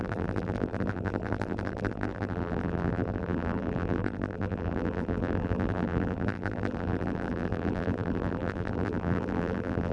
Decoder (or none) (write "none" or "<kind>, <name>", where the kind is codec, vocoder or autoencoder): vocoder, BigVGAN v2